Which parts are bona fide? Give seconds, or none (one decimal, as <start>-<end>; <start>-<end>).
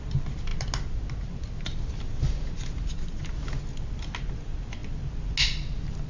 0.0-6.1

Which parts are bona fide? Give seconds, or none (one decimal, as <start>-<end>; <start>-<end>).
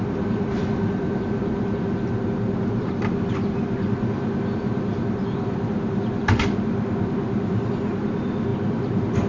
none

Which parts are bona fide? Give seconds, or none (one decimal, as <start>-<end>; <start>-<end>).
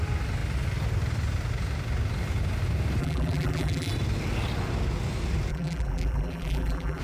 0.0-3.0; 3.9-5.5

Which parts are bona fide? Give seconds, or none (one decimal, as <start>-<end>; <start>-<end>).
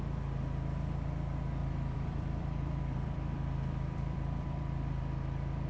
0.0-1.6; 5.0-5.7